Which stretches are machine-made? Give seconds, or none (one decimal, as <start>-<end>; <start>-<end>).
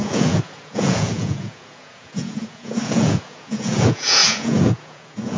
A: 0.0-5.4